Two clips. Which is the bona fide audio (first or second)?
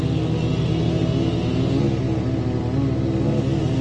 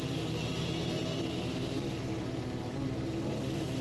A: first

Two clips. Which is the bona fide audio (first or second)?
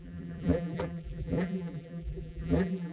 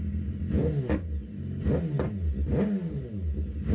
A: second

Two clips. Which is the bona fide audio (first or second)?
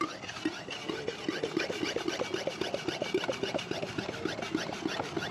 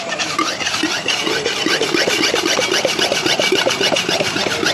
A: first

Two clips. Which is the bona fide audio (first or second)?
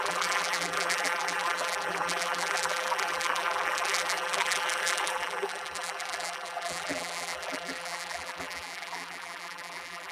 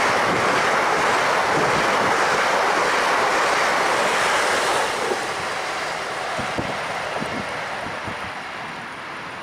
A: second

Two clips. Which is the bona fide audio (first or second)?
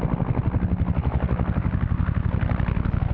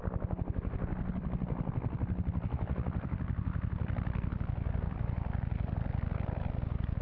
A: first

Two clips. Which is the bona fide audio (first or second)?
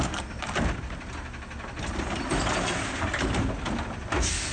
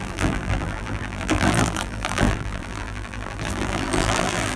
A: first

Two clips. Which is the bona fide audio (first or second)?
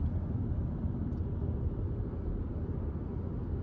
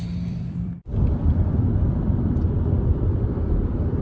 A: first